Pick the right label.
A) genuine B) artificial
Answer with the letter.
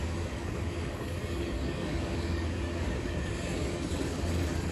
B